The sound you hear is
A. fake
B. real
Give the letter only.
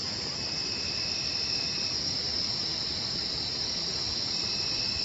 B